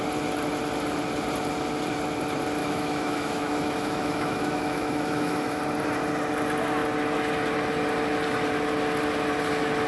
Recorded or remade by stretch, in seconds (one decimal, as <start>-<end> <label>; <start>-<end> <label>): 0.0-2.6 recorded; 2.6-5.6 remade; 5.6-9.9 recorded